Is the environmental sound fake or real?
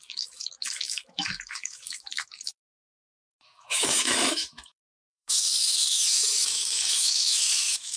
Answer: fake